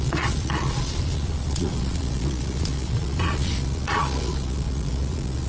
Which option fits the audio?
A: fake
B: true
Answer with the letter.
A